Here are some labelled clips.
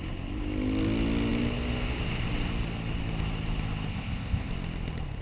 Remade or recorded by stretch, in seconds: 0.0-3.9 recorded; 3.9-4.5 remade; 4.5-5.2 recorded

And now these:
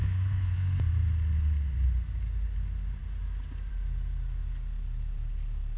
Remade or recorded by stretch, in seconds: 0.0-0.8 remade; 0.8-5.8 recorded

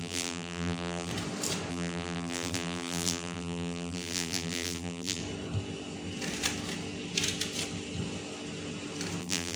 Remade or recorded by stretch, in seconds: 0.0-1.1 remade; 1.1-1.7 recorded; 1.7-5.2 remade; 5.2-9.2 recorded; 9.2-9.6 remade

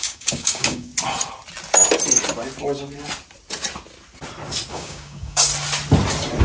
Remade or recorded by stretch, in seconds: 0.0-0.9 remade; 0.9-4.7 recorded; 4.7-5.5 remade; 5.5-6.4 recorded